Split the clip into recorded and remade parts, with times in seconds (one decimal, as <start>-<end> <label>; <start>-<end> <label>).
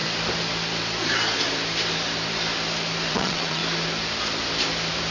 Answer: 0.0-3.1 recorded; 3.1-3.6 remade; 3.6-5.1 recorded